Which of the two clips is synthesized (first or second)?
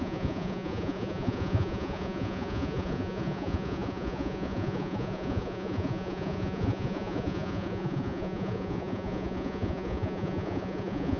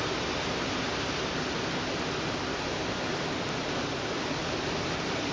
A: first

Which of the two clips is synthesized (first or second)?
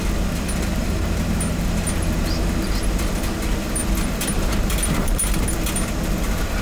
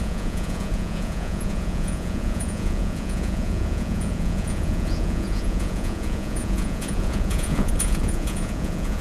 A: second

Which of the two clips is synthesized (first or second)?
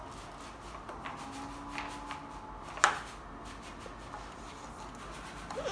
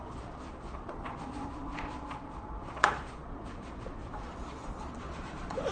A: second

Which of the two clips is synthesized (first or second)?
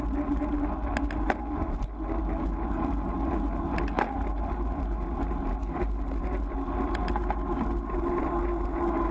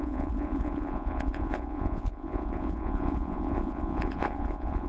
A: second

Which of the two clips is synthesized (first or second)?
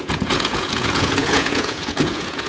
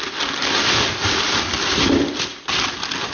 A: first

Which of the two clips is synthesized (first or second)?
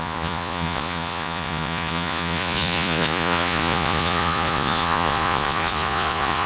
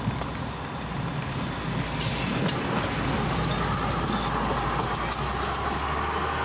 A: first